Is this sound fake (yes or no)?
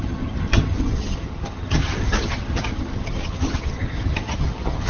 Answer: yes